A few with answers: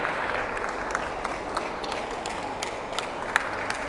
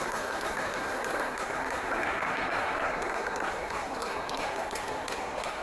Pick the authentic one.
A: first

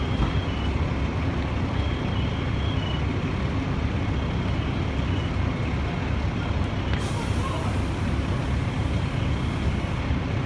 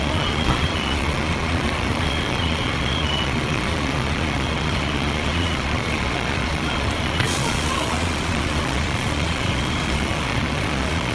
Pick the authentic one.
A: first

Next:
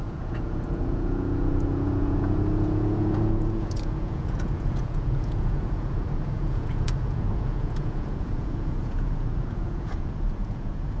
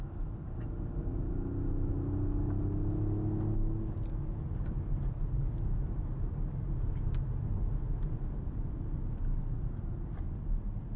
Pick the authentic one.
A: second